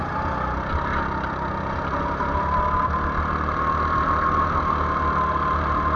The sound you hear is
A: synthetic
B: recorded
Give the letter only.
B